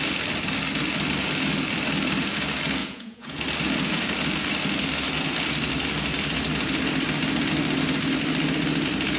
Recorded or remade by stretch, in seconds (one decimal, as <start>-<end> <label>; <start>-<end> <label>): 0.0-2.8 recorded; 2.8-3.4 remade; 3.4-9.2 recorded